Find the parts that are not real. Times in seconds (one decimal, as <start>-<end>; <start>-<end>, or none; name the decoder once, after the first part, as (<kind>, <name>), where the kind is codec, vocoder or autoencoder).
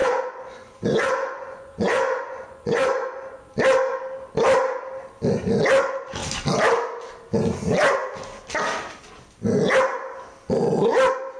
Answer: 0.0-3.4 (vocoder, Vocos)